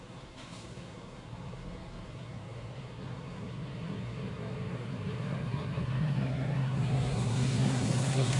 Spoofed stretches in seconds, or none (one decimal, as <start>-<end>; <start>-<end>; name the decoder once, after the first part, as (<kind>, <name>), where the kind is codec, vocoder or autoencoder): 0.0-8.4 (codec, SNAC)